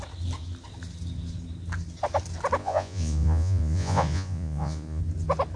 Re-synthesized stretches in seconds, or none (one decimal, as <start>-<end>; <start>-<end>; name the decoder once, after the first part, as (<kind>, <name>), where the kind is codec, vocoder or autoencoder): 2.6-5.0 (vocoder, Vocos)

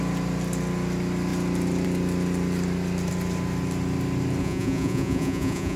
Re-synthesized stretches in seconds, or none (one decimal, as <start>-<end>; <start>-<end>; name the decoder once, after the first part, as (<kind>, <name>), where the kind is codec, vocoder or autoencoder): 4.4-5.8 (vocoder, Vocos)